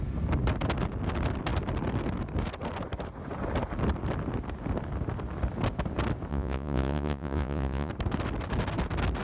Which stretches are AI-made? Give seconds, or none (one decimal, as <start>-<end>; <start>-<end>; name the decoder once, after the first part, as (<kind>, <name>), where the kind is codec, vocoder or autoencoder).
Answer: 6.3-7.9 (vocoder, Vocos)